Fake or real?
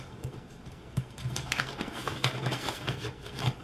fake